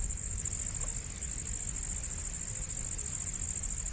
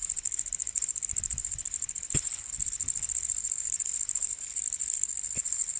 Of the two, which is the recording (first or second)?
first